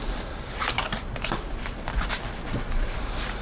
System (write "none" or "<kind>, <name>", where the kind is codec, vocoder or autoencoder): vocoder, BigVGAN v2